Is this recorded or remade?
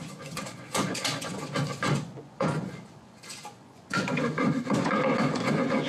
remade